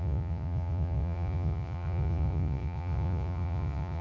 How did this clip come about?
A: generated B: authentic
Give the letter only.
A